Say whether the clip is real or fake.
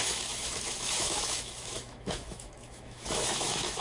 fake